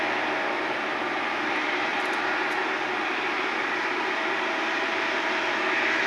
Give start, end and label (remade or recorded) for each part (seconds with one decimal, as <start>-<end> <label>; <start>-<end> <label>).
0.0-6.1 remade